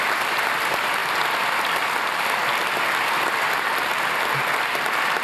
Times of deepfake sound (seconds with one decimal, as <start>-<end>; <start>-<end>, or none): none